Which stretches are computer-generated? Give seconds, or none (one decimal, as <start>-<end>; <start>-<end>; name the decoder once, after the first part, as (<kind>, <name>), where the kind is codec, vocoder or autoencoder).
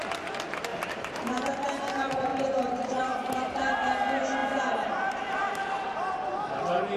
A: 0.7-1.3 (vocoder, BigVGAN v2); 2.3-2.9; 5.4-6.1